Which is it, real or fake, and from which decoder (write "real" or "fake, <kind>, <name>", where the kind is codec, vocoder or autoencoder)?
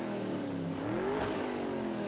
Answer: fake, codec, DAC